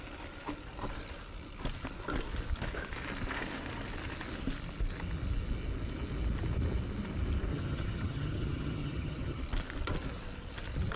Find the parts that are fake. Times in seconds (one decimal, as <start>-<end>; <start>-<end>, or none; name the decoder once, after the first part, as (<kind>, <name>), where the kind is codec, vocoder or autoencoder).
7.5-9.4 (vocoder, HiFi-GAN)